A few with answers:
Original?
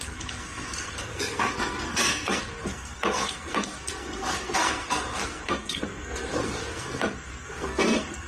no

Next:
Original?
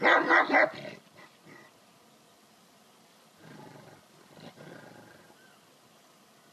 yes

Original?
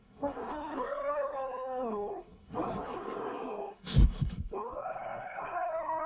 no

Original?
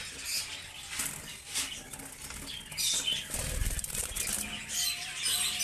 yes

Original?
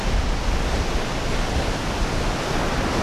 yes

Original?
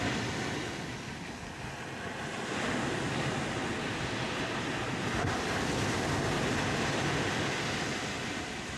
yes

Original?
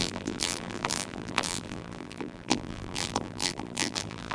no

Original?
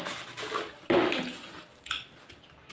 yes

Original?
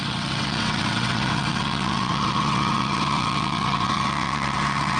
no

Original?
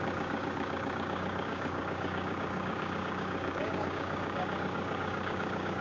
no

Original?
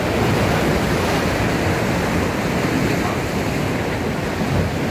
yes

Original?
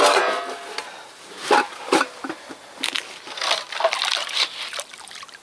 yes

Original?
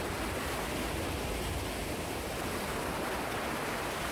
yes